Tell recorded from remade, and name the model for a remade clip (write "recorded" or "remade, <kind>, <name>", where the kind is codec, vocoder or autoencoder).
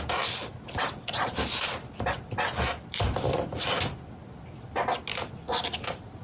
recorded